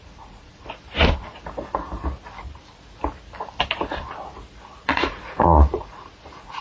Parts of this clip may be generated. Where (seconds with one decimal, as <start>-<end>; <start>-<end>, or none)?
0.0-0.7; 4.7-6.6